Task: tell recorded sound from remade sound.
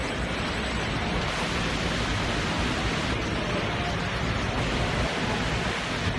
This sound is recorded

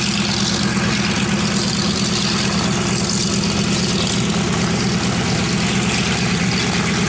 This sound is recorded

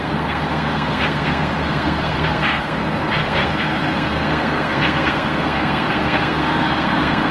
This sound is remade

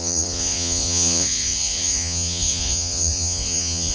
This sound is remade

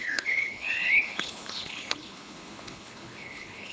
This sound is remade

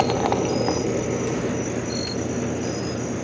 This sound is recorded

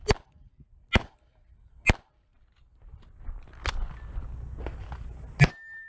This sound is recorded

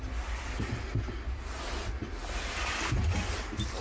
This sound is recorded